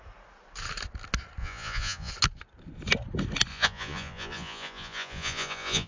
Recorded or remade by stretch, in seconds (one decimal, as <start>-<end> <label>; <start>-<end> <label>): 0.0-1.4 recorded; 1.4-2.1 remade; 2.1-3.5 recorded; 3.5-5.9 remade